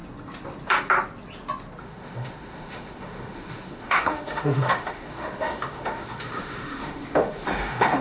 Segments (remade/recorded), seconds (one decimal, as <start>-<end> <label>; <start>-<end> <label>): 0.0-1.8 recorded; 1.8-8.0 remade